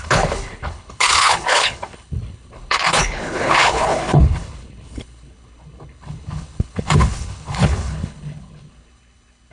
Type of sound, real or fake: fake